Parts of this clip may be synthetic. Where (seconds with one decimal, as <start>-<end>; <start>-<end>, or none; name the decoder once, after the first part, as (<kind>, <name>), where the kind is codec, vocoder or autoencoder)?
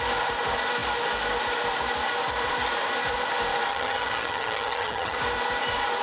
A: 3.7-5.2 (vocoder, HiFi-GAN)